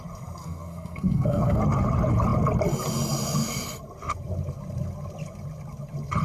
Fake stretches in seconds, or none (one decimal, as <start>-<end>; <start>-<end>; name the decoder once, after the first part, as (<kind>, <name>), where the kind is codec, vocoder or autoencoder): 0.4-1.6 (codec, SNAC)